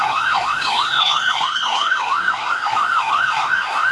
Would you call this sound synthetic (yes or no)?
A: yes